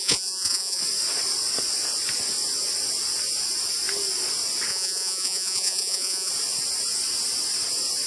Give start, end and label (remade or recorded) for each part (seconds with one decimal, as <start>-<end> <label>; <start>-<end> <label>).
0.0-0.8 remade; 0.8-4.7 recorded; 4.7-6.3 remade; 6.3-8.1 recorded